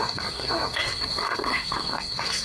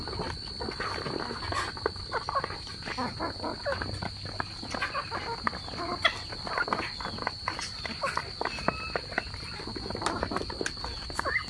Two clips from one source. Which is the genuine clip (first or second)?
second